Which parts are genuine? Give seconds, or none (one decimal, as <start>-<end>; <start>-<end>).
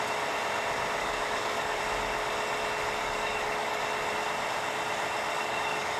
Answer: 0.0-1.0; 1.8-3.0; 3.8-5.3